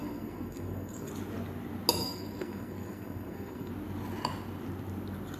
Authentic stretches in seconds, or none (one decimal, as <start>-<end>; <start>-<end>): 1.1-2.0; 3.7-5.4

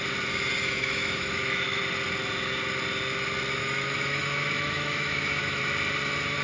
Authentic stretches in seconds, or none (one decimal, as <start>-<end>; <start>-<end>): 0.0-0.6; 1.8-3.6; 5.6-6.4

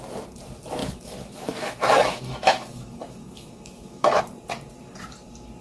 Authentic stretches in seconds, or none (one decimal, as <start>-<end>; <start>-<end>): 0.0-0.8; 4.2-5.6